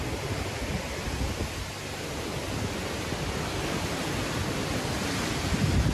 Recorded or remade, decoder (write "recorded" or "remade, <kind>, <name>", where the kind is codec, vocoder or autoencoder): recorded